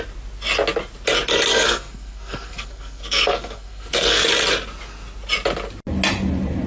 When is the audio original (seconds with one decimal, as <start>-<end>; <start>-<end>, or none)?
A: 0.0-1.5; 4.3-6.7